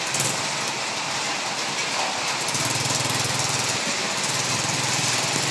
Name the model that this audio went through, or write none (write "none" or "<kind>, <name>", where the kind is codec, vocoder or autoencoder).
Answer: none